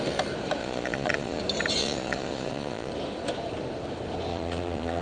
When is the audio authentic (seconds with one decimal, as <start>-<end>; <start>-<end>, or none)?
0.0-0.6; 1.4-1.8; 2.9-4.3